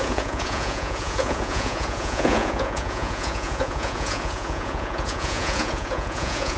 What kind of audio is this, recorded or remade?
remade